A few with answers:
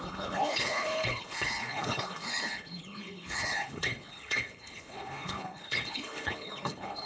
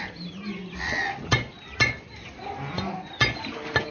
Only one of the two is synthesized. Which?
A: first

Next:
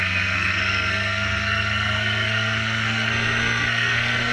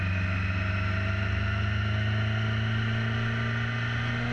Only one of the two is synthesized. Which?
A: first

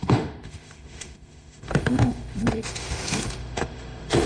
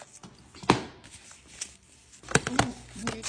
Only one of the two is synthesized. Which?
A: first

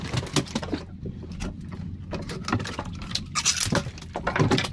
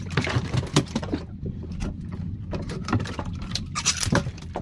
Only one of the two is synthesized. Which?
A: second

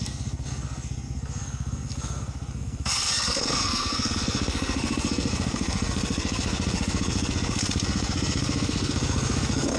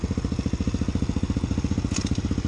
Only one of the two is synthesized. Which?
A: first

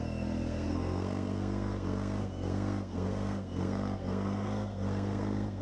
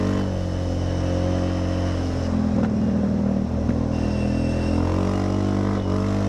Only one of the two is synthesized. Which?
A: first